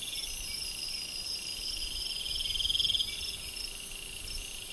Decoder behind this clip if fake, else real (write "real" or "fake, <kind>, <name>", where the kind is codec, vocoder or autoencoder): real